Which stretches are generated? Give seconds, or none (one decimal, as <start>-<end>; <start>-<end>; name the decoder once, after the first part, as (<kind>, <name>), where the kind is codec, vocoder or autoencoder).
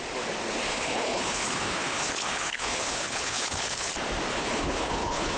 0.7-3.9 (codec, HILCodec); 4.3-5.4